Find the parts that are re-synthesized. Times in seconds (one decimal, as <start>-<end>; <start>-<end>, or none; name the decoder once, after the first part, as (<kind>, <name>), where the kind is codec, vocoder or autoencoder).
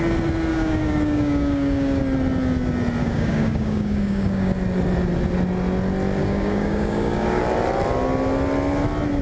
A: 0.5-2.0 (codec, DAC); 3.0-4.5; 6.2-7.4